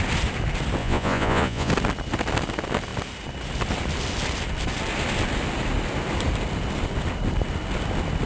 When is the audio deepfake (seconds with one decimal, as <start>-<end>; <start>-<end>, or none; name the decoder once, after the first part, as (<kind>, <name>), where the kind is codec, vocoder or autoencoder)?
0.8-1.7 (vocoder, Vocos)